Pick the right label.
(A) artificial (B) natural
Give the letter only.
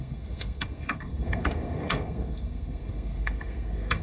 A